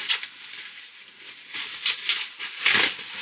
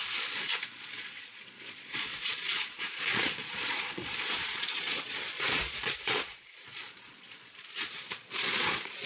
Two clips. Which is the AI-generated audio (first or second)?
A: second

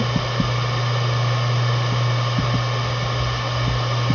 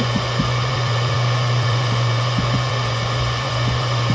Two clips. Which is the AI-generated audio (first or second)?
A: second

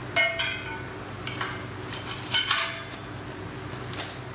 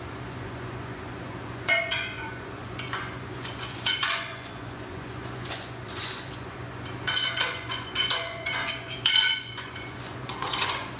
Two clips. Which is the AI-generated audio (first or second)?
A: second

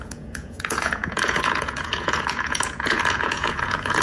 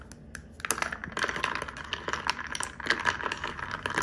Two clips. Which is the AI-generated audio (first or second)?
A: first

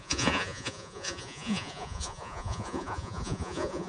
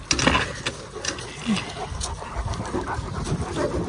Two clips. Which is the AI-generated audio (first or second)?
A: first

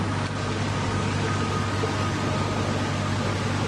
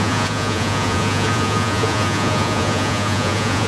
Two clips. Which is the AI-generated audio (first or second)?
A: second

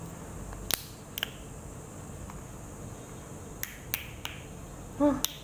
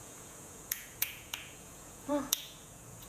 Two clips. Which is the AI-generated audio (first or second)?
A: second